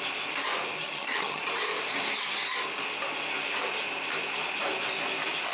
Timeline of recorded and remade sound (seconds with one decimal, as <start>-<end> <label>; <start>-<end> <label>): 0.0-0.8 recorded; 0.8-1.4 remade; 1.4-5.5 recorded

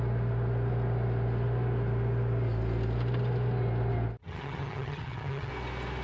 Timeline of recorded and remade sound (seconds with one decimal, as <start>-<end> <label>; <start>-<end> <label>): 0.0-4.2 recorded; 4.2-5.5 remade; 5.5-6.0 recorded